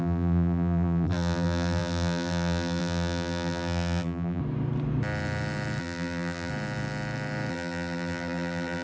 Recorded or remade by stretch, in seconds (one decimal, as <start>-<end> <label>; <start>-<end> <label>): 0.0-4.4 remade; 4.4-5.8 recorded; 5.8-6.5 remade; 6.5-7.5 recorded; 7.5-8.8 remade